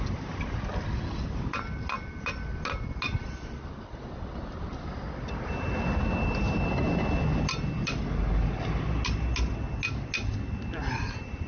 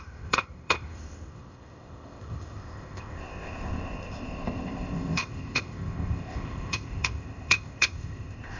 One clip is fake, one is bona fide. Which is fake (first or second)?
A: second